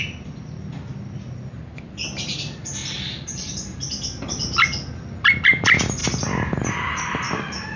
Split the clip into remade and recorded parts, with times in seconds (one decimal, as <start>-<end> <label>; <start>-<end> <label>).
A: 0.0-2.8 recorded; 2.8-4.9 remade; 4.9-7.8 recorded